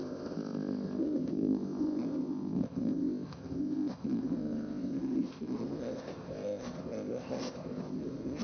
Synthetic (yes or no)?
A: yes